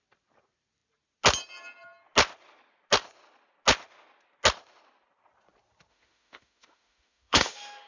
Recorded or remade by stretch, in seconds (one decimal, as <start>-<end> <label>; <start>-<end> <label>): 0.0-5.9 recorded; 5.9-7.9 remade